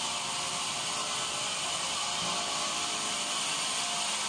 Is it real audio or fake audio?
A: real